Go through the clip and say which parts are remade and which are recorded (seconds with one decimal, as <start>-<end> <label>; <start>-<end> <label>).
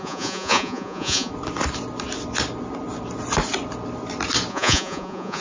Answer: 0.0-1.3 remade; 1.3-4.5 recorded; 4.5-5.4 remade